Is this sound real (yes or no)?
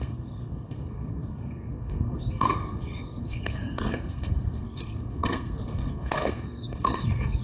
no